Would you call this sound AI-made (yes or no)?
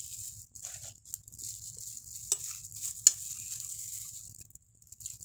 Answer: no